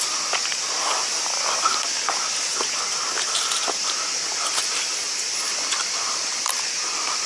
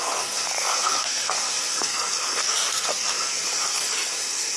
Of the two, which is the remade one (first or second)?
second